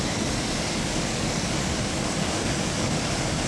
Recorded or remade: remade